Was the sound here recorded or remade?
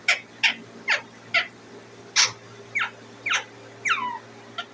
recorded